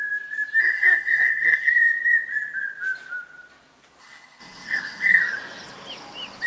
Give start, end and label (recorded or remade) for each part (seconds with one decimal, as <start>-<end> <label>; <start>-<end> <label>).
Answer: 0.0-0.6 recorded; 0.6-1.7 remade; 1.7-4.0 recorded; 4.0-5.2 remade; 5.2-6.5 recorded